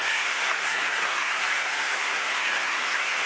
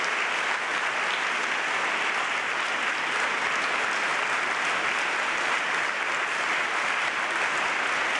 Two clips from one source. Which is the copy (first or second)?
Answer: first